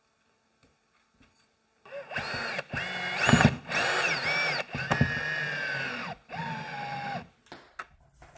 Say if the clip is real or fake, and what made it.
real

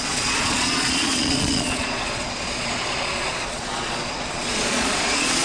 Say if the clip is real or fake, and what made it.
fake, vocoder, Vocos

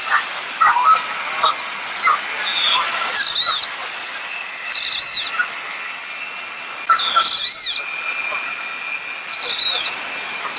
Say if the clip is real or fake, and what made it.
real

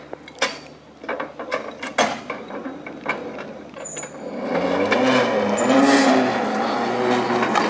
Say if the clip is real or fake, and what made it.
real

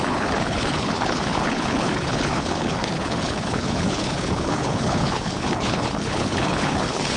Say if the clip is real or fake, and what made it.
fake, codec, HILCodec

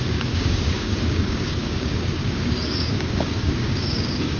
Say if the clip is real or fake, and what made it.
fake, codec, DAC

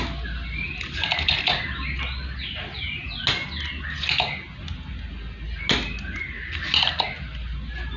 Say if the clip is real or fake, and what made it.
real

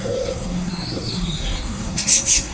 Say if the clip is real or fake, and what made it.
fake, codec, SNAC